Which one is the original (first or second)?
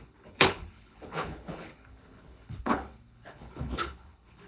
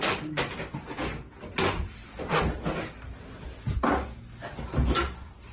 second